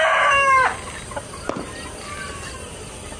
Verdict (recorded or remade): recorded